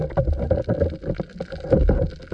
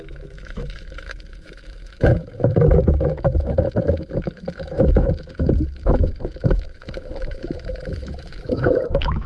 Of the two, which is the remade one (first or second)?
second